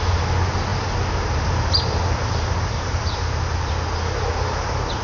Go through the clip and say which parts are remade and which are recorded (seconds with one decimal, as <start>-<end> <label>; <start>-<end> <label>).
0.0-5.0 recorded